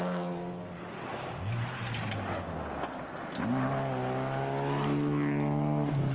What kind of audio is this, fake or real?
real